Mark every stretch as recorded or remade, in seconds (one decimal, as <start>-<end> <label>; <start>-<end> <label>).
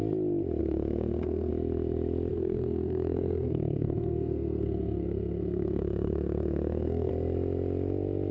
0.0-0.6 recorded; 0.6-1.5 remade; 1.5-2.3 recorded; 2.3-7.1 remade; 7.1-8.3 recorded